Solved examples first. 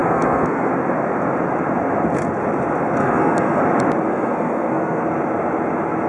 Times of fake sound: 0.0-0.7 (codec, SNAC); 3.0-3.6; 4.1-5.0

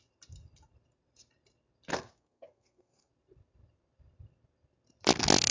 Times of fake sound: 1.9-3.1 (codec, SNAC)

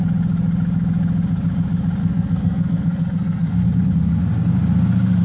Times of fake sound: 2.0-3.6 (codec, SNAC)